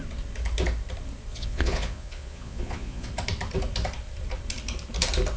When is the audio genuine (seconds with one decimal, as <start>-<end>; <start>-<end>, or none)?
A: 0.0-1.3; 3.1-5.4